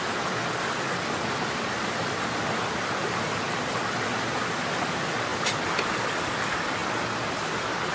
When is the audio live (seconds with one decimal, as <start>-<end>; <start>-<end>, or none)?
0.0-7.9